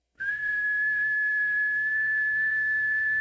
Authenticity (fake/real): fake